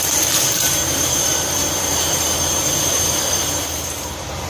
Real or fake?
fake